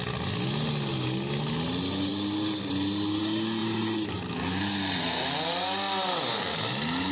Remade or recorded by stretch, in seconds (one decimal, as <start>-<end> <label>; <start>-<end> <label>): 0.0-3.6 recorded; 3.6-4.6 remade; 4.6-7.1 recorded